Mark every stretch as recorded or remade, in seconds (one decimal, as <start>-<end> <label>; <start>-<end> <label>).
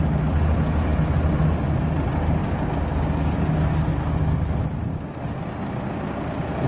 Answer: 0.0-2.4 recorded; 2.4-4.5 remade; 4.5-4.9 recorded; 4.9-5.4 remade; 5.4-6.7 recorded